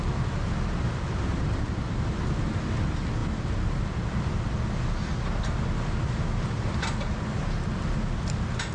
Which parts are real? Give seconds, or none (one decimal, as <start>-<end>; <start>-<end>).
0.0-8.7